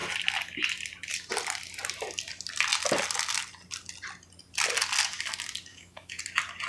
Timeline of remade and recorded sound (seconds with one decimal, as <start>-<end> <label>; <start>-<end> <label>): 0.0-5.7 recorded; 5.7-6.2 remade; 6.2-6.7 recorded